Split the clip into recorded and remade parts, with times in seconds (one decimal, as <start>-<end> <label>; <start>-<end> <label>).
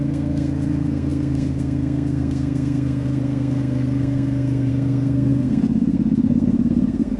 0.0-7.2 remade